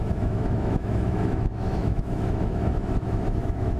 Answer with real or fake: fake